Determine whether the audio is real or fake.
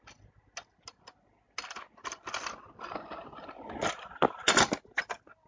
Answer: real